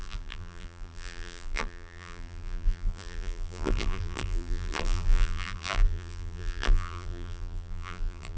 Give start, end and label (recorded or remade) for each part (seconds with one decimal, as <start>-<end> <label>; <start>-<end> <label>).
0.0-8.4 remade